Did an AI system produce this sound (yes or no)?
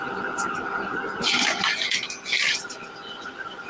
no